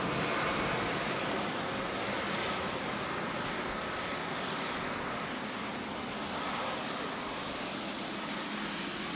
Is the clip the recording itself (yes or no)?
yes